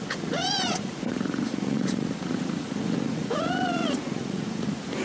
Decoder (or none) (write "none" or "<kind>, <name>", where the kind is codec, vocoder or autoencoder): vocoder, Vocos